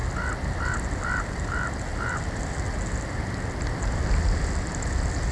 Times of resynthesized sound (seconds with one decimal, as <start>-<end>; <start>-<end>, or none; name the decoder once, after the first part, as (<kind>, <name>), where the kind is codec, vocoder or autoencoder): none